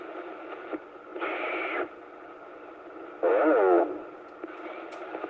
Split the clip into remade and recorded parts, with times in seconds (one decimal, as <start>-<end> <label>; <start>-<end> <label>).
0.0-5.3 recorded